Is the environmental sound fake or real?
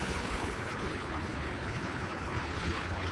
fake